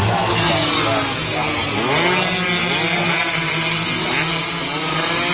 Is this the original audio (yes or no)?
yes